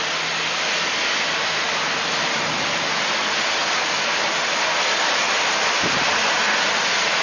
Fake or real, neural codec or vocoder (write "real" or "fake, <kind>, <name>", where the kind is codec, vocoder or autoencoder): real